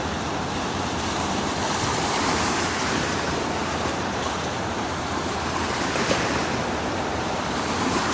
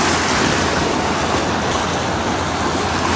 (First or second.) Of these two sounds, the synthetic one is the first